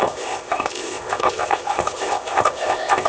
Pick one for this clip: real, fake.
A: fake